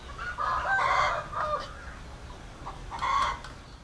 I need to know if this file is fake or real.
real